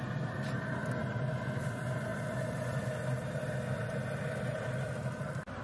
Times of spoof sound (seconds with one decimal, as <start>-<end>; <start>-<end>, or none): none